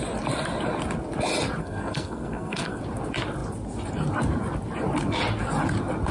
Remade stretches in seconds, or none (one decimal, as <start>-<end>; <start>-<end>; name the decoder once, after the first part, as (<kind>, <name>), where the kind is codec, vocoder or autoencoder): 1.6-2.8 (codec, SNAC)